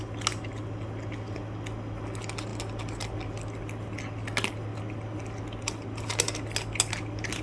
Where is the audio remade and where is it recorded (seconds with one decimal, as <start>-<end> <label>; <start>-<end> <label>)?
0.0-7.4 recorded